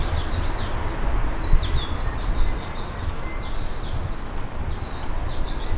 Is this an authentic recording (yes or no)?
yes